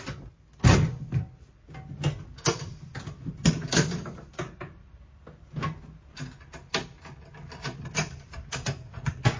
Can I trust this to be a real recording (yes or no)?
yes